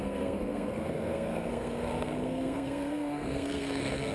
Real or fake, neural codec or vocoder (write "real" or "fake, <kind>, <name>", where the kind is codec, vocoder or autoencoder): fake, codec, SNAC